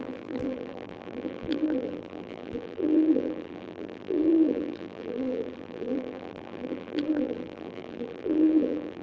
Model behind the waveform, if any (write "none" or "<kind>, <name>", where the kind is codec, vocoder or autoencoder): vocoder, BigVGAN v2